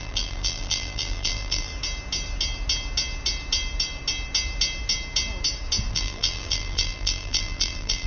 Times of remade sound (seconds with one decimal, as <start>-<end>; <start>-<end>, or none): 0.0-1.7; 5.9-8.1